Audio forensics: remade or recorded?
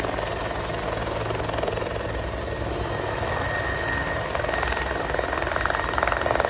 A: recorded